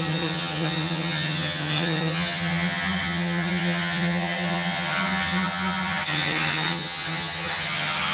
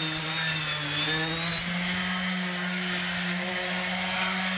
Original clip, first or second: second